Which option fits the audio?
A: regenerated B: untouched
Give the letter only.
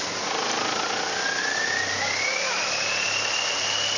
B